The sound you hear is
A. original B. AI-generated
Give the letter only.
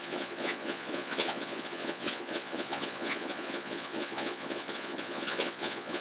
B